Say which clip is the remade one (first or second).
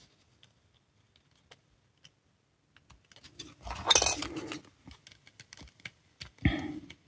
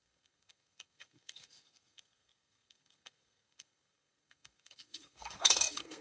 second